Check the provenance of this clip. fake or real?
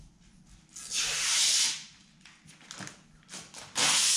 real